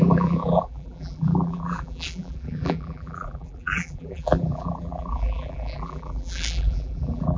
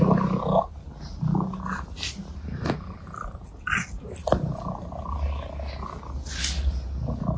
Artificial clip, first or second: first